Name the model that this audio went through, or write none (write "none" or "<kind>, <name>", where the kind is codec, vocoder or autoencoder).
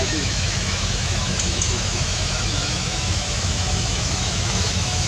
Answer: autoencoder, DAC-VAE